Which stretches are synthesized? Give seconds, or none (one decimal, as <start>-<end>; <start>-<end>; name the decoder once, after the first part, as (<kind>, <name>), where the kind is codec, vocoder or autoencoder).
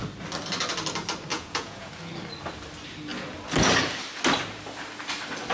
1.3-1.9 (vocoder, Vocos)